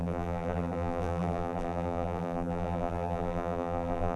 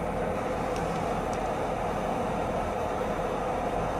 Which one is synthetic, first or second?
first